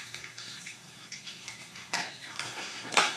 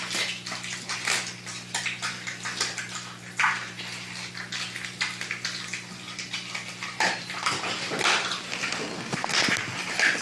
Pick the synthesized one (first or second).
first